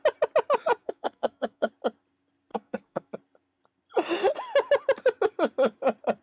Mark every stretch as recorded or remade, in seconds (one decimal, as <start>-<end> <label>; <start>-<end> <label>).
0.0-0.8 recorded; 0.8-1.7 remade; 1.7-2.5 recorded; 2.5-3.1 remade; 3.1-6.2 recorded

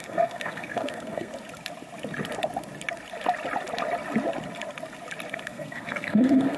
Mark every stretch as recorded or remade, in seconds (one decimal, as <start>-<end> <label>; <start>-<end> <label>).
0.0-1.3 remade; 1.3-5.3 recorded; 5.3-6.6 remade

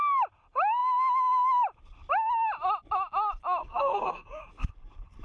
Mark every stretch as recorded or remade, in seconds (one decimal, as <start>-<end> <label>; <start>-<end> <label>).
0.0-3.6 recorded; 3.6-4.4 remade; 4.4-5.2 recorded

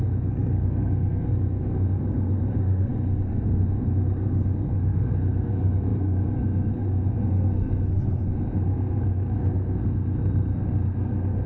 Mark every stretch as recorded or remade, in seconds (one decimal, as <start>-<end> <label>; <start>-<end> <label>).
0.0-11.5 remade

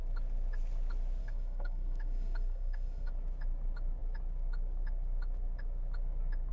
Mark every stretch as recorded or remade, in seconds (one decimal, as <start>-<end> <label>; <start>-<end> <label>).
0.0-1.2 recorded; 1.2-3.1 remade; 3.1-6.5 recorded

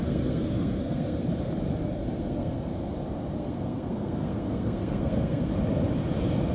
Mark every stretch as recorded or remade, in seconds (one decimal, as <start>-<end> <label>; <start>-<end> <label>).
0.0-1.3 remade; 1.3-1.8 recorded; 1.8-2.7 remade; 2.7-3.4 recorded; 3.4-5.5 remade; 5.5-6.5 recorded

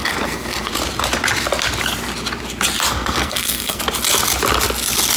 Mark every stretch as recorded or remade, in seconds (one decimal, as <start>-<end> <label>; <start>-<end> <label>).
0.0-0.7 remade; 0.7-2.9 recorded; 2.9-3.8 remade; 3.8-5.2 recorded

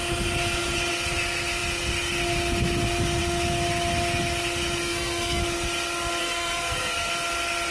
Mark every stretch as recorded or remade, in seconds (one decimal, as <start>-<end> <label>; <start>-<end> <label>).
0.0-4.8 recorded; 4.8-5.4 remade; 5.4-6.2 recorded; 6.2-7.1 remade; 7.1-7.7 recorded